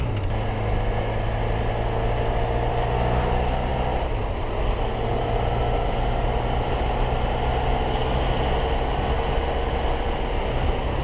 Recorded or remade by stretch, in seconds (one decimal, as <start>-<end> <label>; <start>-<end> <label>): 0.0-11.0 recorded